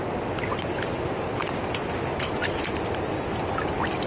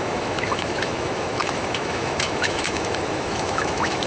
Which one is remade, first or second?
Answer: second